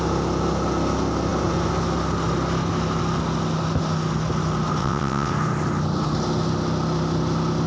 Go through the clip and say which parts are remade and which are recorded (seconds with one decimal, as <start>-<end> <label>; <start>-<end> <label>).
0.0-4.8 recorded; 4.8-5.3 remade; 5.3-7.7 recorded